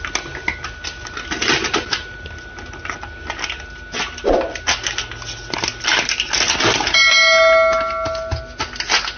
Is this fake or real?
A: real